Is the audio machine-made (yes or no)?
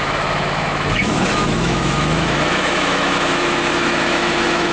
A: yes